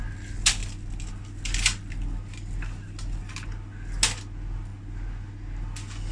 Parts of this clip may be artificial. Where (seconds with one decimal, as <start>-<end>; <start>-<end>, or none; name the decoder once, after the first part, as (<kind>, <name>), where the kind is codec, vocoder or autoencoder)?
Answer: none